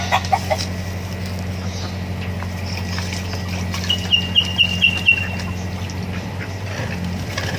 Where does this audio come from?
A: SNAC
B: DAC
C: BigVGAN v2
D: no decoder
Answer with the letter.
D